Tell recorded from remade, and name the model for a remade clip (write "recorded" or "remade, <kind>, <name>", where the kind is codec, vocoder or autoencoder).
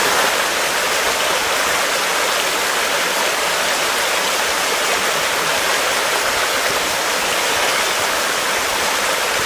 recorded